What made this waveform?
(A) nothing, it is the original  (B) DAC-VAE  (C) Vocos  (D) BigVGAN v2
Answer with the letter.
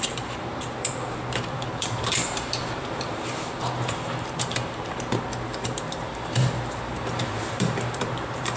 D